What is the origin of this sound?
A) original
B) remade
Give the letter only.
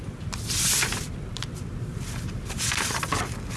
A